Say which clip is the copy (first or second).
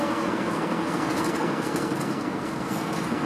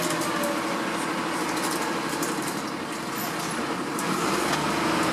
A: first